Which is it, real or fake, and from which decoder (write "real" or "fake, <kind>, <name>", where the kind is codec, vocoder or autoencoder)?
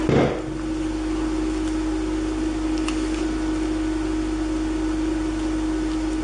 real